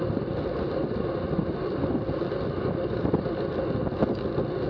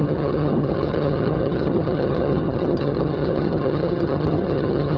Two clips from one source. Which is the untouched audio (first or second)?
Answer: first